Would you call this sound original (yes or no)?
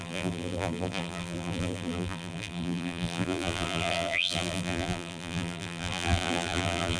no